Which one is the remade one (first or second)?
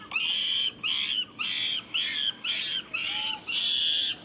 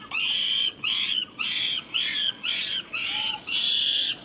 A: second